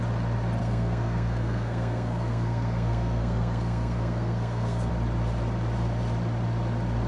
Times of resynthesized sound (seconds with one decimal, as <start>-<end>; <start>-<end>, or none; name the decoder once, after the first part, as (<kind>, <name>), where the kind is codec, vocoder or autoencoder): 0.6-4.9 (codec, SNAC)